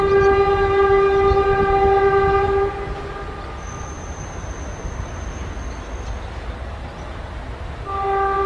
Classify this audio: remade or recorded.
recorded